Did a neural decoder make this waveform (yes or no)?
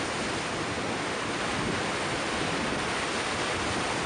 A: no